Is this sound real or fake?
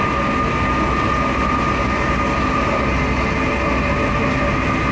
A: real